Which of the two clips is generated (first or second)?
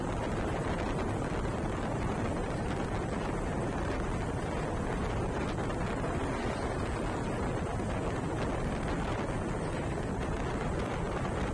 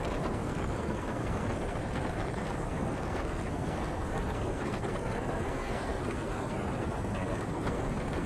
second